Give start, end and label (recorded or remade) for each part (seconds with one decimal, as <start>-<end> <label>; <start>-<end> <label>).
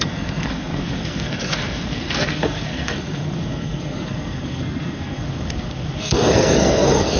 0.0-7.2 remade